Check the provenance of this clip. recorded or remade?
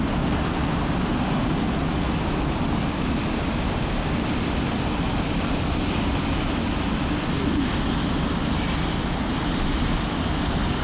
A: recorded